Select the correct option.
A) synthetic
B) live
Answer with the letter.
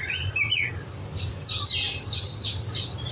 B